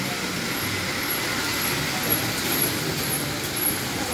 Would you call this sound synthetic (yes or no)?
no